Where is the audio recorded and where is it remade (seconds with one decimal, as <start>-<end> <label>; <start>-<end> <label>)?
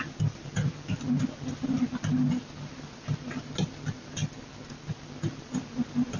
0.0-6.2 recorded